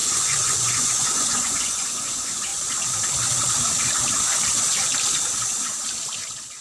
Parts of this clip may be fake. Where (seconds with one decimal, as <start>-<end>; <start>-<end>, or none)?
0.0-2.5